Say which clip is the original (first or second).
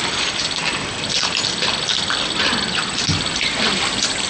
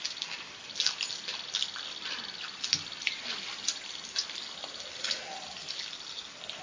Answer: second